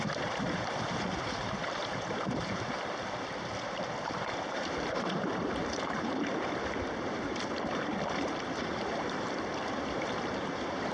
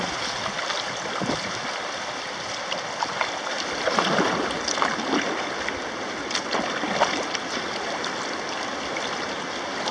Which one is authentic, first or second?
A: second